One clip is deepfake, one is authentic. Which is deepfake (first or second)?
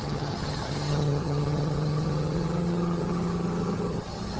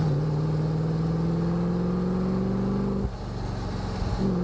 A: first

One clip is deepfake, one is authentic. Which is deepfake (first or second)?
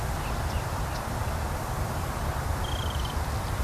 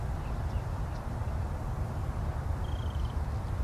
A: first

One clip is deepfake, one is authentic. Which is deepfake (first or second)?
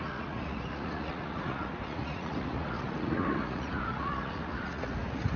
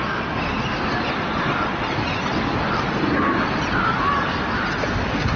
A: first